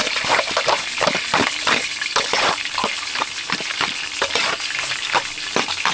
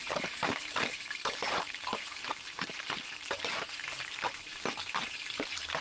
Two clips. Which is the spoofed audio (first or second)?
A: second